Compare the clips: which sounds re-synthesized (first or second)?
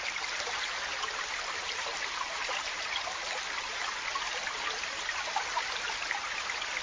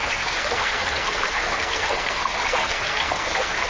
second